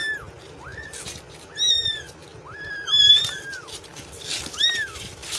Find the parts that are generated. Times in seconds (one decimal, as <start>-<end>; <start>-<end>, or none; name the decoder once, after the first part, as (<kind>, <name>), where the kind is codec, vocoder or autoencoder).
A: 2.2-5.4 (vocoder, BigVGAN v2)